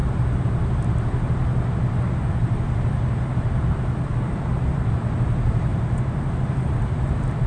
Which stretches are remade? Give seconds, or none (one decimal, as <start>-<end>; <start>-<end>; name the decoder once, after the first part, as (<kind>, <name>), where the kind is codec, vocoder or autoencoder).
4.5-5.7 (vocoder, BigVGAN v2); 6.5-7.5

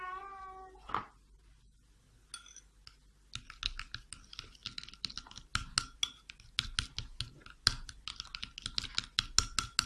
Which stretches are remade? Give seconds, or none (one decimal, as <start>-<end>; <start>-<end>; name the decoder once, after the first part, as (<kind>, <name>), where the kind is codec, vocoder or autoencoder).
none

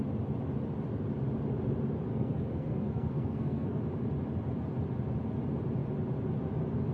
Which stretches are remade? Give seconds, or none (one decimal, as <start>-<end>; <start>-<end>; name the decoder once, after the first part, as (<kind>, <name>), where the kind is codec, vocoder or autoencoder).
2.1-3.8 (codec, SNAC)

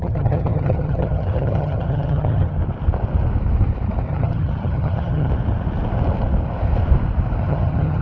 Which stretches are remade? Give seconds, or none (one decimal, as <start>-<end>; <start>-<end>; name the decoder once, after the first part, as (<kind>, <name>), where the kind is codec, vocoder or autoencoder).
0.0-2.6 (vocoder, HiFi-GAN); 4.1-5.3; 7.4-8.0